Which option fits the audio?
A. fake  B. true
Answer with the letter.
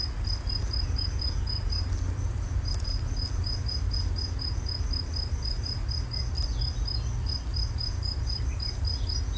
B